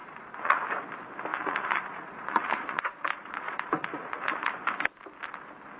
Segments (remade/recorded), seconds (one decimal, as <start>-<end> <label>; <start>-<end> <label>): 0.0-0.6 remade; 0.6-1.3 recorded; 1.3-4.5 remade; 4.5-5.8 recorded